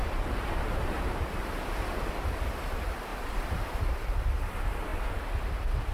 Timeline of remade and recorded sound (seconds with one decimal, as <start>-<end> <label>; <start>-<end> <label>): 0.0-2.1 remade; 2.1-3.1 recorded; 3.1-3.8 remade; 3.8-5.9 recorded